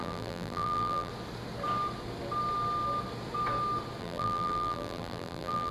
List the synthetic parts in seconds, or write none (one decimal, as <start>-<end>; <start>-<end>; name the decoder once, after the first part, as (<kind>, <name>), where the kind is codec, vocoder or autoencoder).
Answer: 0.0-1.1 (vocoder, BigVGAN v2); 4.0-5.7